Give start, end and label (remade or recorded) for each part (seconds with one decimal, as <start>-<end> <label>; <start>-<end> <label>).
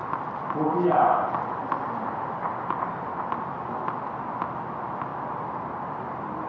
0.0-1.3 remade; 1.3-5.1 recorded; 5.1-6.5 remade